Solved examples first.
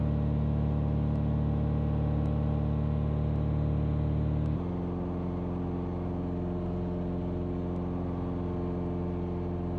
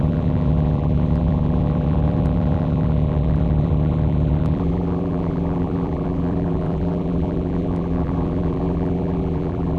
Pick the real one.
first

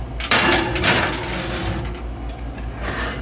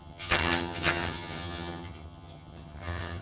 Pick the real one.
first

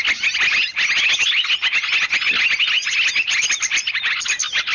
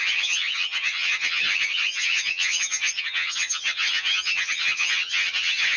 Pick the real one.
first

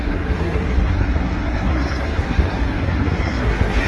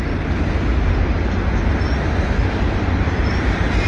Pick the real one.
second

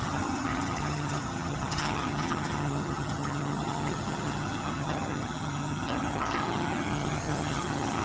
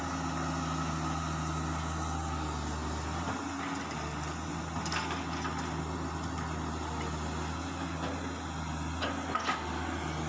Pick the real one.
second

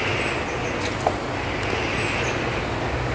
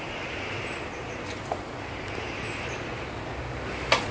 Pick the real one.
first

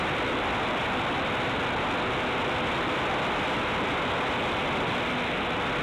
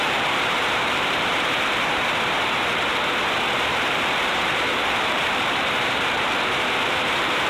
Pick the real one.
first